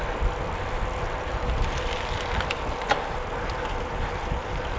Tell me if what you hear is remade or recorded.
recorded